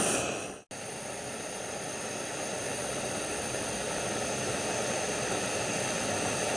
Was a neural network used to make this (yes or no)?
no